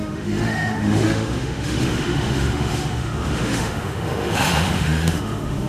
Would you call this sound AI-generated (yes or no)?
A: yes